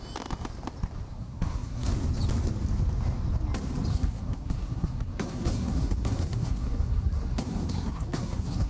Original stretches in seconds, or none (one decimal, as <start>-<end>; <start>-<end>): 0.0-1.1; 1.9-3.9